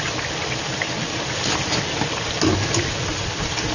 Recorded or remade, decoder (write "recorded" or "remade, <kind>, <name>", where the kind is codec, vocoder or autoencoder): recorded